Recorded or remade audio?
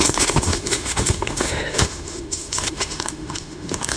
remade